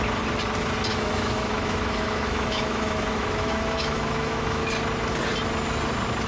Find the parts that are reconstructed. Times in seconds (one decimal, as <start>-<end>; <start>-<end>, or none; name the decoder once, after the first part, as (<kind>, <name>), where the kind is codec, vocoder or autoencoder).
0.9-4.7 (autoencoder, DAC-VAE)